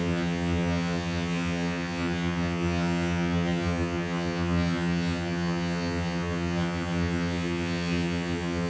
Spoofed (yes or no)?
yes